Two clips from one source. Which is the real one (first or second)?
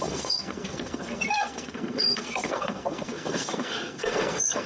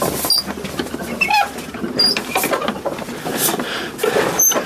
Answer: second